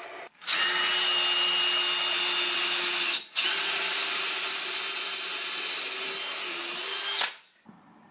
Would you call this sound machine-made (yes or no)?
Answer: no